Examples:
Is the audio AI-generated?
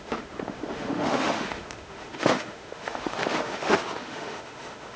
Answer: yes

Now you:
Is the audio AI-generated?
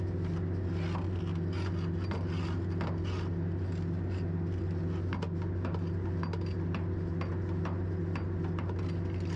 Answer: no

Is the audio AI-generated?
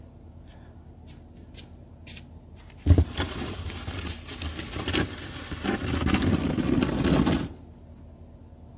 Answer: no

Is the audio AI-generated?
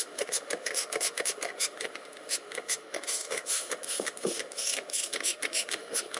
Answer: yes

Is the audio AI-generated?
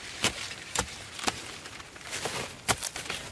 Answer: no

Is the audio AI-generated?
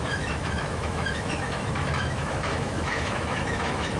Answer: yes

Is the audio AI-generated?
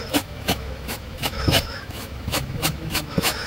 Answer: yes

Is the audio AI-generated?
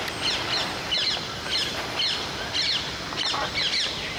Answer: no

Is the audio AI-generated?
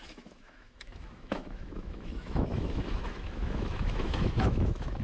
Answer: yes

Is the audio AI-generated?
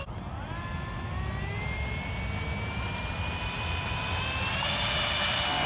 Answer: no